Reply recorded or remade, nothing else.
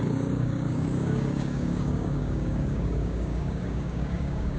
remade